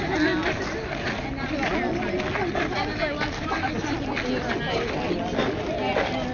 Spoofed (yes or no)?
no